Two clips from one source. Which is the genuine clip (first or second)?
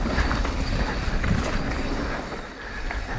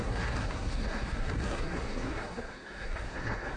first